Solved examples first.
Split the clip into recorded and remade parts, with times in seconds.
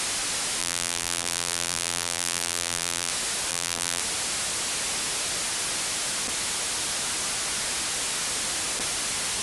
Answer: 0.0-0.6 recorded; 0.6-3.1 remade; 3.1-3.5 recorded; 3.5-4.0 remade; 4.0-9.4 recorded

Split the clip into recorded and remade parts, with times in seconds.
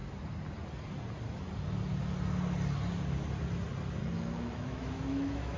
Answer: 0.0-4.0 recorded; 4.0-5.6 remade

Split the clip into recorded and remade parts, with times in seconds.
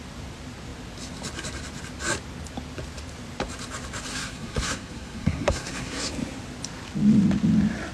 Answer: 0.0-4.1 recorded; 4.1-6.1 remade; 6.1-7.9 recorded